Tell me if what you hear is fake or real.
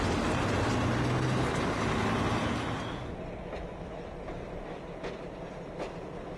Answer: real